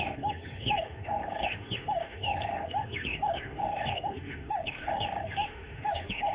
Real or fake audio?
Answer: fake